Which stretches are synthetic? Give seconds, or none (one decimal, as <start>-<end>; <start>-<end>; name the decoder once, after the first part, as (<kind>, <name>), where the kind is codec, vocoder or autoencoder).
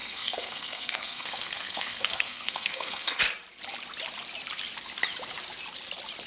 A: 0.0-3.2 (codec, SNAC)